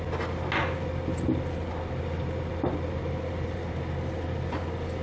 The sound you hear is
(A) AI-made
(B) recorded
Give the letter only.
B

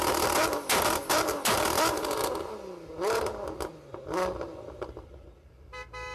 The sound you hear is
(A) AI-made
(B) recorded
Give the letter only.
B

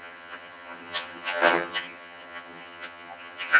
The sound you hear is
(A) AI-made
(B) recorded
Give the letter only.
A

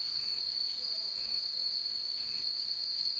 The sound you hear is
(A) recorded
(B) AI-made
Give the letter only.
B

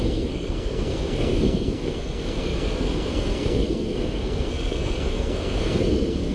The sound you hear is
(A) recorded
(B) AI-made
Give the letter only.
B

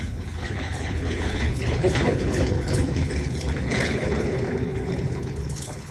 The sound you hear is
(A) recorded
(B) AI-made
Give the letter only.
B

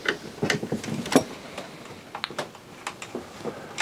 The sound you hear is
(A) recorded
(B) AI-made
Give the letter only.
A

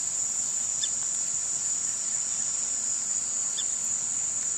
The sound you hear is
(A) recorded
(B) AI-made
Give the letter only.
A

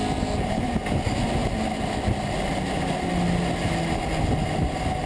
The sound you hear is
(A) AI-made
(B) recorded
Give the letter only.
B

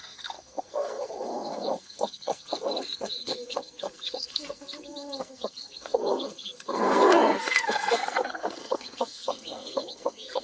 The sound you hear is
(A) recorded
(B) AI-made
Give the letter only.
B